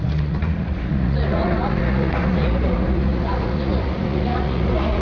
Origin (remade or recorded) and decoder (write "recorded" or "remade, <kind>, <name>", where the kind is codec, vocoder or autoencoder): remade, vocoder, Vocos